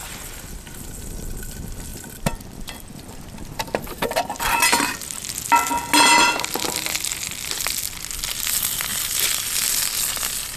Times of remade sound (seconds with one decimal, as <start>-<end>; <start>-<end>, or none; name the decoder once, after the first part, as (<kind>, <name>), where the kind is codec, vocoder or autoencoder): 1.9-5.2 (vocoder, BigVGAN v2); 8.9-9.7

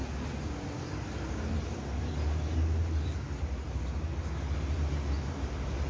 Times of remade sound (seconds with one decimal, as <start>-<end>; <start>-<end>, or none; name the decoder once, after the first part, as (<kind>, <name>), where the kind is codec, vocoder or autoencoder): none